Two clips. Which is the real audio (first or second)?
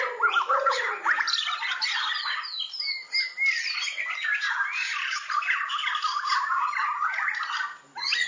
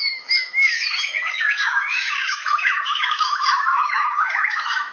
first